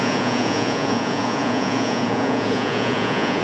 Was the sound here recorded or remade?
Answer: remade